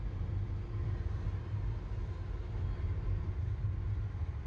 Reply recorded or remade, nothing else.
recorded